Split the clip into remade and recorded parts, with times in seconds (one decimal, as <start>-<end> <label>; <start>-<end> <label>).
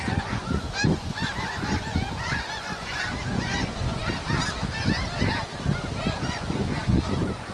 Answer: 0.0-4.0 remade; 4.0-6.0 recorded; 6.0-7.5 remade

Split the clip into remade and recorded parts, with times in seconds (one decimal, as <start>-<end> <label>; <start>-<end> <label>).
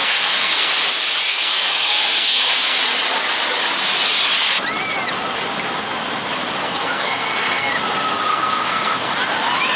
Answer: 0.0-0.7 remade; 0.7-1.3 recorded; 1.3-2.8 remade; 2.8-6.6 recorded; 6.6-7.7 remade; 7.7-8.3 recorded; 8.3-9.1 remade; 9.1-9.8 recorded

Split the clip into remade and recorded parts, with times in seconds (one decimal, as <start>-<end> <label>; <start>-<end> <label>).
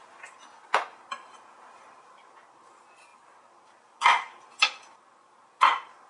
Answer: 0.0-6.1 recorded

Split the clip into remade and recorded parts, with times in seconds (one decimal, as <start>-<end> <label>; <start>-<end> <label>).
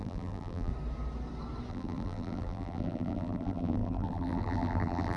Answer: 0.0-0.7 remade; 0.7-1.7 recorded; 1.7-5.2 remade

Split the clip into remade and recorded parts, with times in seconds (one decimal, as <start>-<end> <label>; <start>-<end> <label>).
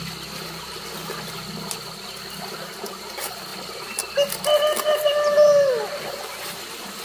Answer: 0.0-7.0 recorded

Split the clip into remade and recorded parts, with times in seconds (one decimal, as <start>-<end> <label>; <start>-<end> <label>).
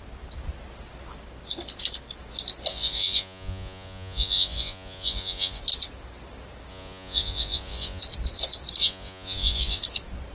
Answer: 0.0-2.7 recorded; 2.7-5.6 remade; 5.6-6.7 recorded; 6.7-8.0 remade; 8.0-8.8 recorded; 8.8-9.8 remade; 9.8-10.3 recorded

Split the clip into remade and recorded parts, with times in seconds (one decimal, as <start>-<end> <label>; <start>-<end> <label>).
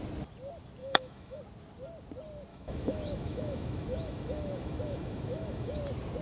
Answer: 0.0-0.8 recorded; 0.8-1.4 remade; 1.4-2.5 recorded; 2.5-5.8 remade; 5.8-6.2 recorded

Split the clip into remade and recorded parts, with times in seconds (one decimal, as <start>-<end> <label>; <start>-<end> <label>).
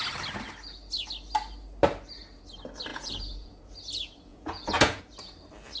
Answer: 0.0-2.9 recorded; 2.9-3.6 remade; 3.6-4.3 recorded; 4.3-5.0 remade; 5.0-5.8 recorded